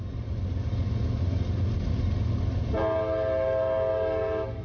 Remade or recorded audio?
recorded